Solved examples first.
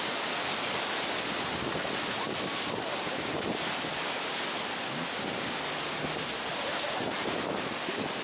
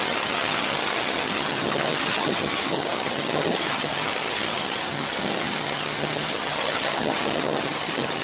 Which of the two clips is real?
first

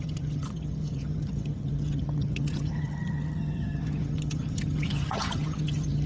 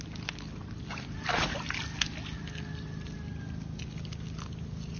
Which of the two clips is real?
second